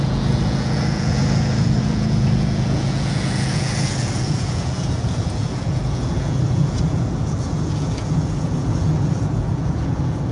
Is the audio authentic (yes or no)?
no